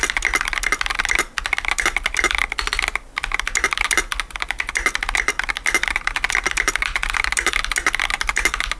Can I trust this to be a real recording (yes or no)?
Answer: yes